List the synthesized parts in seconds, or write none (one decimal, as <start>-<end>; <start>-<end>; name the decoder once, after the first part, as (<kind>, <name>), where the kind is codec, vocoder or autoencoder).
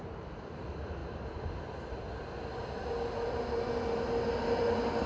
none